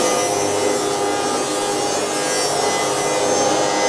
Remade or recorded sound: recorded